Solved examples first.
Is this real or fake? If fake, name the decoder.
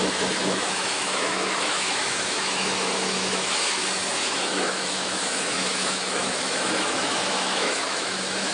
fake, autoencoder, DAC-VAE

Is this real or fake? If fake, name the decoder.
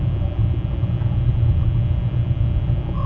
real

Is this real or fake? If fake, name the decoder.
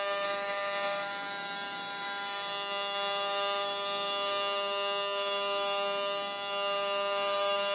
fake, codec, DAC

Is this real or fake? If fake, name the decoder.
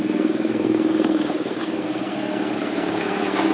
fake, codec, SNAC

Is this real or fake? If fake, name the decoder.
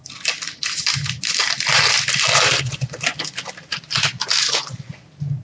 real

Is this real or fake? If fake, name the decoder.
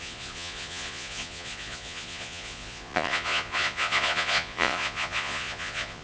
fake, vocoder, Vocos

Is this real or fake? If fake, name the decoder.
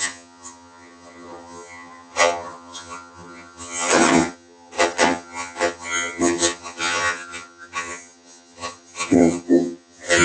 fake, vocoder, HiFi-GAN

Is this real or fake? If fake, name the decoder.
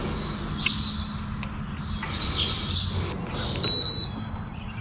real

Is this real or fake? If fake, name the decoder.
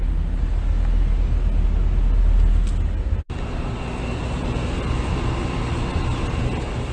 real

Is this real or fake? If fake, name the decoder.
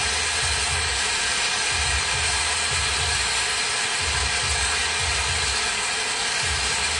real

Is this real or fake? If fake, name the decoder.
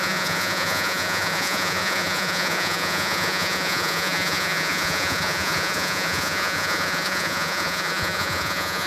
fake, vocoder, Vocos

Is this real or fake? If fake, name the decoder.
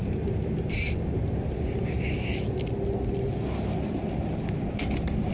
real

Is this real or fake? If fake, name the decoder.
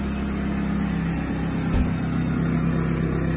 real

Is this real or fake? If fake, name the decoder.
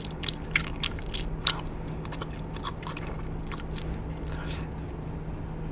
real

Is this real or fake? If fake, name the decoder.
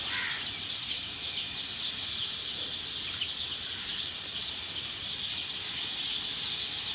real